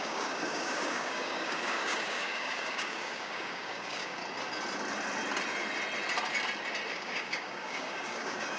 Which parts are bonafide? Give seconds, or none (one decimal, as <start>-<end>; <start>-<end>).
4.2-6.9